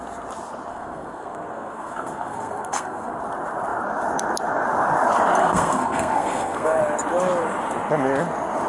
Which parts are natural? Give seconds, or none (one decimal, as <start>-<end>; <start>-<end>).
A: 0.0-0.7; 3.2-5.4; 6.8-8.7